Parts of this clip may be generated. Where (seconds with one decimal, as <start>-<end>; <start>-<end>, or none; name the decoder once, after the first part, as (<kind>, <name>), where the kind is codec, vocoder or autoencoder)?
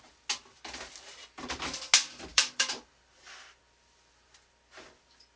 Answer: 2.3-3.6 (vocoder, BigVGAN v2)